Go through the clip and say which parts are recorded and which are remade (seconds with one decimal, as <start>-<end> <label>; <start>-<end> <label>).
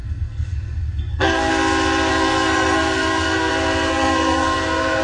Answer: 0.0-1.5 remade; 1.5-2.1 recorded; 2.1-3.5 remade; 3.5-3.9 recorded; 3.9-5.0 remade